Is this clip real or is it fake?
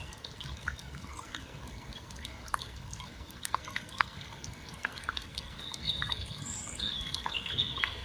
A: fake